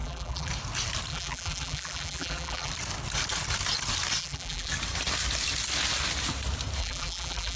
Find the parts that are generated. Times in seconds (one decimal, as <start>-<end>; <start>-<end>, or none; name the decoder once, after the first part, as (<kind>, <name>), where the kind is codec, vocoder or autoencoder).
0.0-0.5 (vocoder, BigVGAN v2); 1.1-2.7; 4.2-4.7; 6.8-7.6